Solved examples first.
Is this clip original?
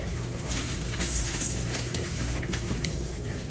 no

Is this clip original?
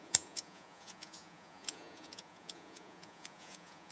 no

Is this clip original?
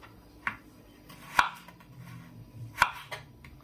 no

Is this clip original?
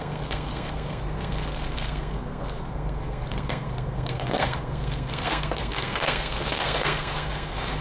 no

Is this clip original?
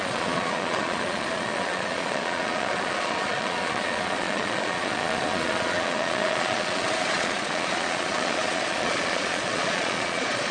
no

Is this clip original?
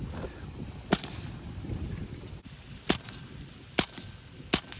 yes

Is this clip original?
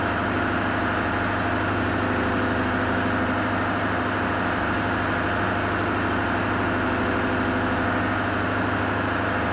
yes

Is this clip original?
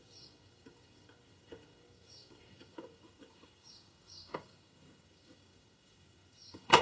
no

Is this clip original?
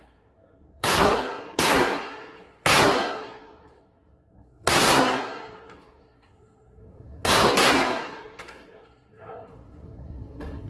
no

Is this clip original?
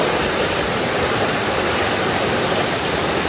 yes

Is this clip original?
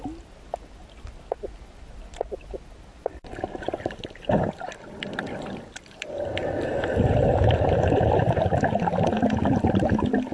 yes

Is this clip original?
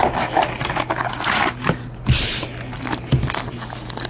yes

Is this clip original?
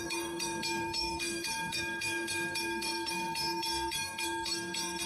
no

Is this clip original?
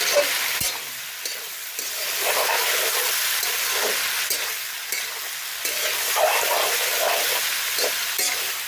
yes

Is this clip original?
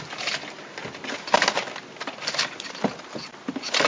yes